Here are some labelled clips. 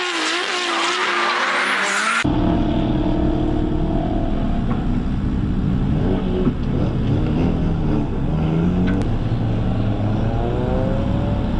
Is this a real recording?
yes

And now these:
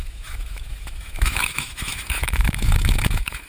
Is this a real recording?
no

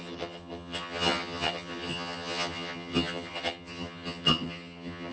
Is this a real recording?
no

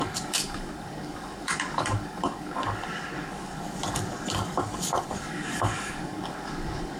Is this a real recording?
no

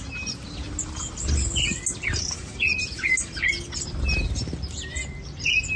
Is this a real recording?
yes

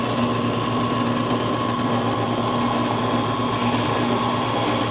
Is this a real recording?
yes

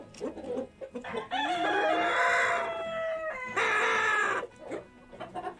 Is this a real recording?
yes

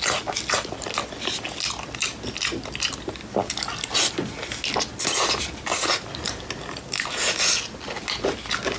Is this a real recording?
yes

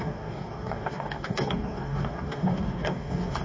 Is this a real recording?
no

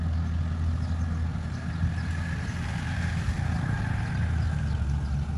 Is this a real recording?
yes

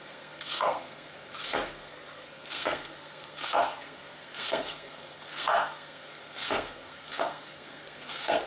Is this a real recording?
no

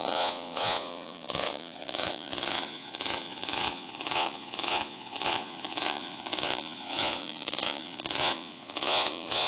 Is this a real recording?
no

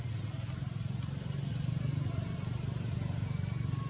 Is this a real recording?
yes